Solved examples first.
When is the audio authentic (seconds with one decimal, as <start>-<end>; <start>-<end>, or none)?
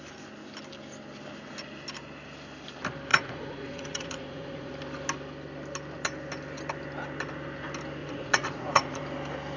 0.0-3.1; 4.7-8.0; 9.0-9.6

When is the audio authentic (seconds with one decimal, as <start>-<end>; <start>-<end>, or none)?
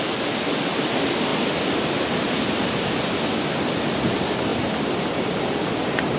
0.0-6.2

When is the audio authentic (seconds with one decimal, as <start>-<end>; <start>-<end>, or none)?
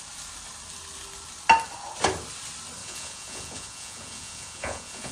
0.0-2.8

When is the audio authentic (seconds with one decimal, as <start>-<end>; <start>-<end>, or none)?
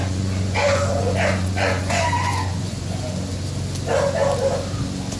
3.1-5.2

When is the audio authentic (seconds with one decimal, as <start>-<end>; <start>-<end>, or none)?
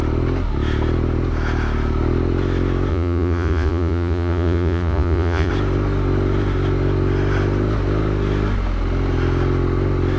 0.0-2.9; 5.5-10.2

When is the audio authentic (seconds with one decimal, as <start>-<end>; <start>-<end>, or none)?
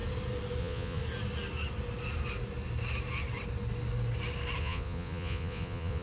0.0-0.6; 1.0-4.6